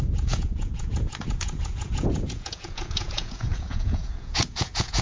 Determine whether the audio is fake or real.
fake